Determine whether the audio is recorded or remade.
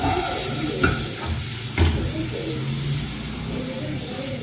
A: recorded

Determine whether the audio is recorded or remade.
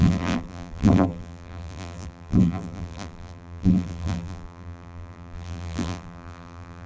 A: remade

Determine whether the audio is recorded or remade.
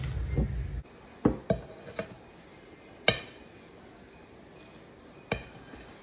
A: recorded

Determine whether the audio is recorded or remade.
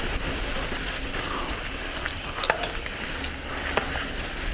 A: recorded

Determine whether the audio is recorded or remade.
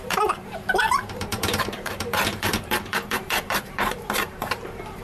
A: remade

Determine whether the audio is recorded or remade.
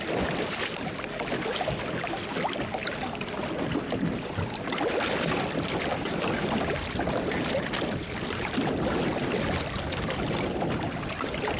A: recorded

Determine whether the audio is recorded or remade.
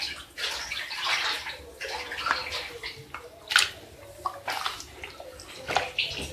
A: recorded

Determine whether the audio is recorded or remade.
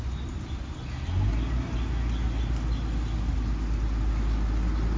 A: recorded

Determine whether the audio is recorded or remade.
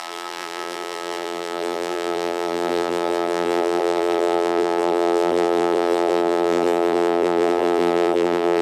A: remade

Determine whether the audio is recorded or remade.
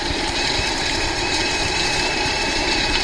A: remade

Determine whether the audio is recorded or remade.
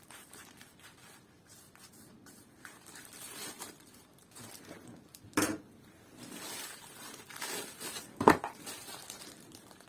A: remade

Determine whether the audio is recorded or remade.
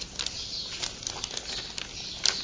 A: recorded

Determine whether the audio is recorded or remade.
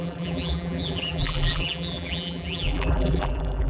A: remade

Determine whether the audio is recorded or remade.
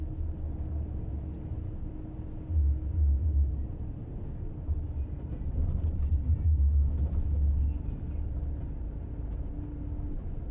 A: recorded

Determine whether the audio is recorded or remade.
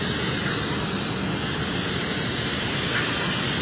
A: recorded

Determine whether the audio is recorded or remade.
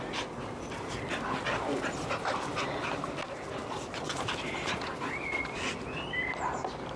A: recorded